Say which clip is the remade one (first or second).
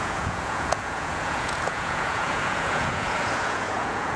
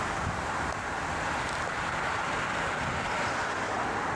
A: first